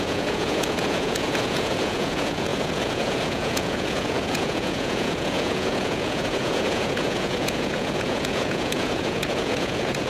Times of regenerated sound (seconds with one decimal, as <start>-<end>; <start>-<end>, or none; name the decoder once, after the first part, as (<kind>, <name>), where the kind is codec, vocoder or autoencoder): 0.0-10.1 (vocoder, Vocos)